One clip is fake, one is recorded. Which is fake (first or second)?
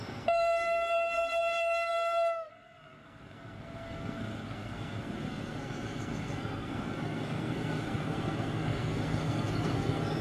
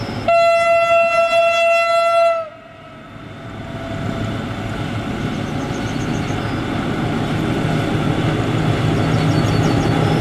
first